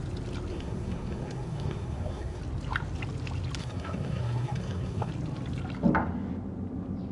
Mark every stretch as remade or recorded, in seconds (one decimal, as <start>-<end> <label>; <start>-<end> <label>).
0.0-0.5 recorded; 0.5-2.4 remade; 2.4-3.6 recorded; 3.6-5.1 remade; 5.1-7.1 recorded